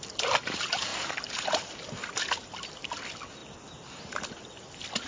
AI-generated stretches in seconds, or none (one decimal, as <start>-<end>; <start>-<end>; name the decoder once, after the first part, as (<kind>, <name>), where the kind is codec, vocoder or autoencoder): none